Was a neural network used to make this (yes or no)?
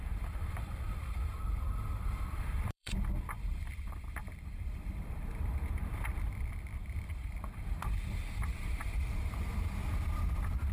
yes